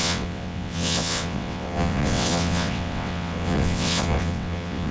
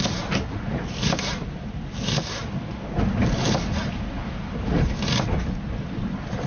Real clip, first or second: second